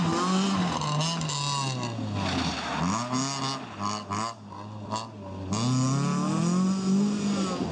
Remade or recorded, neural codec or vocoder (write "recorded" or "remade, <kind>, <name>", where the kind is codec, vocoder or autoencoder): recorded